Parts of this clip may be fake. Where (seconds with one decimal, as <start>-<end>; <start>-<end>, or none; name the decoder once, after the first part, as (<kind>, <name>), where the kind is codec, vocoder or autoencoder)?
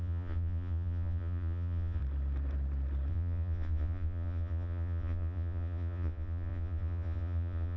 0.0-2.0 (vocoder, Vocos); 3.1-7.8